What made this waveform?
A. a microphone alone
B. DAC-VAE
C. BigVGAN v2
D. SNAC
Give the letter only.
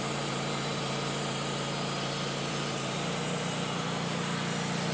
C